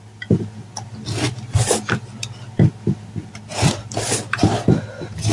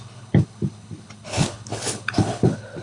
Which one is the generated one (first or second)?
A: second